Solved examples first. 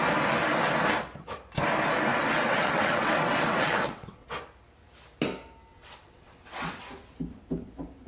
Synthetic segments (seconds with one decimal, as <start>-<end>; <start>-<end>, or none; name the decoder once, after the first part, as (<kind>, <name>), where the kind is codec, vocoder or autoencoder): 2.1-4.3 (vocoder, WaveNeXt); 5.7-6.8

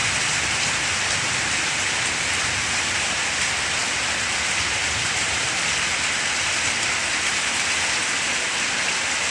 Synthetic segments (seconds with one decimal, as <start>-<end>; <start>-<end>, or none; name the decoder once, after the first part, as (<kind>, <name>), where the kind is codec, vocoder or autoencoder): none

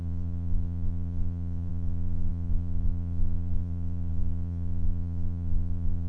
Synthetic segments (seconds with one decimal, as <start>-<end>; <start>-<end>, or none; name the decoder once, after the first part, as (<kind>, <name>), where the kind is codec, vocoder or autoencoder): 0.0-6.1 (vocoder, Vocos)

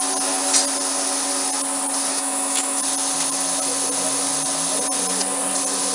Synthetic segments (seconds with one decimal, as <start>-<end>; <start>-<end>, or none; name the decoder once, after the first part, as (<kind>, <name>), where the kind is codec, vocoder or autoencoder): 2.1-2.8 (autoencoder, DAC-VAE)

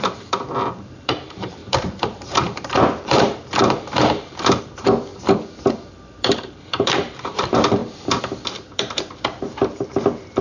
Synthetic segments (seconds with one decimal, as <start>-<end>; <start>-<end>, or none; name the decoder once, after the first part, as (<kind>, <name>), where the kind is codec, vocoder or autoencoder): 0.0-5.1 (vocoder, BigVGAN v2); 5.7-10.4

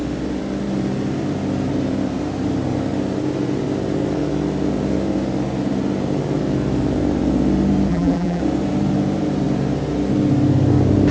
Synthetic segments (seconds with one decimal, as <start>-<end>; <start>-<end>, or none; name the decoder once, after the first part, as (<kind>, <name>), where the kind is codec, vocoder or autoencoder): 7.9-8.4 (vocoder, BigVGAN v2)